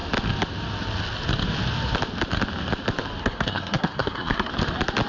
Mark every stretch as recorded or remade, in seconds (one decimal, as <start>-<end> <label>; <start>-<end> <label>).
0.0-3.2 recorded; 3.2-4.5 remade; 4.5-5.1 recorded